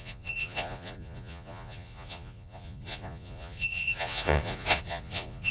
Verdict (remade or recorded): remade